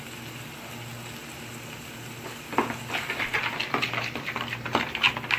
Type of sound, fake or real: fake